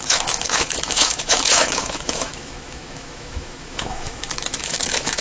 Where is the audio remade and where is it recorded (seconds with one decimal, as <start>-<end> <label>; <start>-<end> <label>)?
0.0-5.2 remade